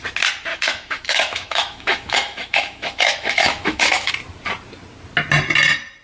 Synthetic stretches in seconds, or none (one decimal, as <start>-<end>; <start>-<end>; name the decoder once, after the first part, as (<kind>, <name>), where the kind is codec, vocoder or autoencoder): 0.5-4.1 (autoencoder, DAC-VAE)